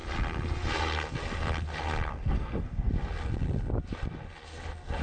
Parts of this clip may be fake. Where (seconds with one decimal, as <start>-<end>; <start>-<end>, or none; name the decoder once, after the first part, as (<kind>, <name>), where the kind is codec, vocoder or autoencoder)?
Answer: 2.1-2.9 (codec, SNAC)